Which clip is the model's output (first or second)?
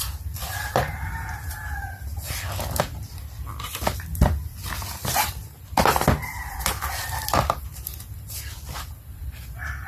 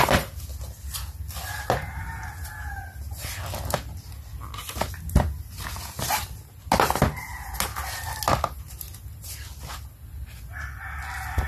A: first